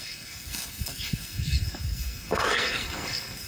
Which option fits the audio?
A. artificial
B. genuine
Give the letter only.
A